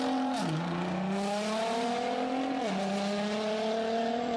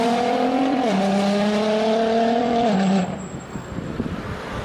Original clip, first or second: first